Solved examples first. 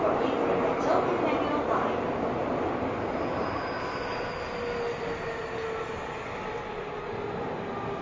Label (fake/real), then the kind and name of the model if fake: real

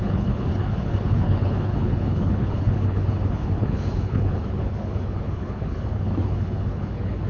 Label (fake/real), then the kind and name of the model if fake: fake, codec, HILCodec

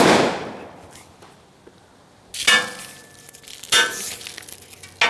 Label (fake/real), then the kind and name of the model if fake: real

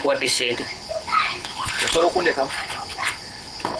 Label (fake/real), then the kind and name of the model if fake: fake, codec, HILCodec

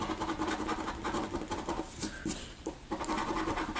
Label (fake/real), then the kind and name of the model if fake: real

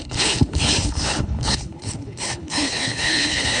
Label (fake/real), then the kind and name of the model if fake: fake, codec, HILCodec